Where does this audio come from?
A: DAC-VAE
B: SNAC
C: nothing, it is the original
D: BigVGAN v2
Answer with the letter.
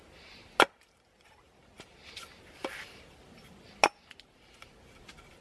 C